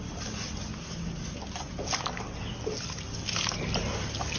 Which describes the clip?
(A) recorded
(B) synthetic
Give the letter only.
A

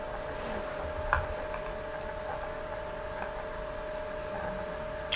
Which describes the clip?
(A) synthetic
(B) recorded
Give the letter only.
B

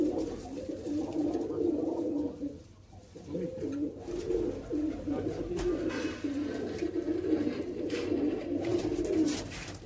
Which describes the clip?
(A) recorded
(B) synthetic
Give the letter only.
A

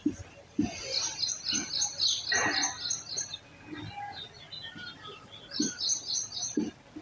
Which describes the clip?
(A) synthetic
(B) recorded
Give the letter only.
B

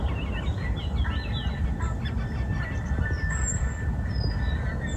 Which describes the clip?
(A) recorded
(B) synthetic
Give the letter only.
A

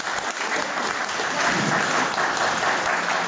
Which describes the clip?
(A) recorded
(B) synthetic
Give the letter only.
A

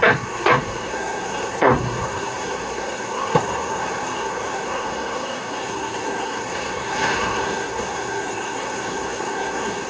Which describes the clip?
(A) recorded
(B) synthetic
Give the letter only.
B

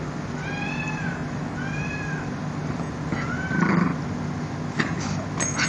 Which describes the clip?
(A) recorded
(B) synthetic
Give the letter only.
A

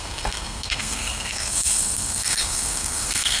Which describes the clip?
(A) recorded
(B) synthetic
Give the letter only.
B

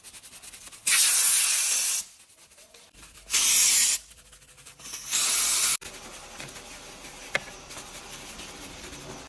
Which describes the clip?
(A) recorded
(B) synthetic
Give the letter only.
A